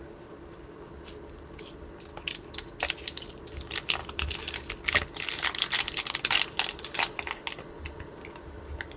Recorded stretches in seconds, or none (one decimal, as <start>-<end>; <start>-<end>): 0.0-9.0